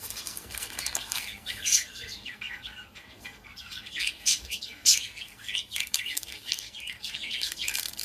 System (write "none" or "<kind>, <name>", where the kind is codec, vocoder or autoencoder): codec, SNAC